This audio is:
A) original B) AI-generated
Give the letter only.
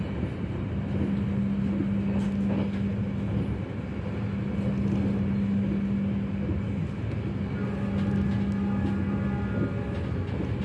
A